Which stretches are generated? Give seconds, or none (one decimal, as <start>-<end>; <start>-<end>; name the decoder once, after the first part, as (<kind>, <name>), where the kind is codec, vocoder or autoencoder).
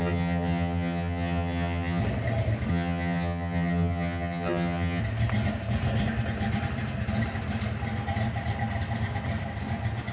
0.0-2.0 (vocoder, HiFi-GAN); 2.7-5.0